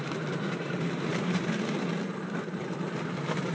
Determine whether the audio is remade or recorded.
remade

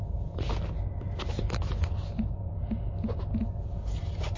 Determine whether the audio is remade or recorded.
recorded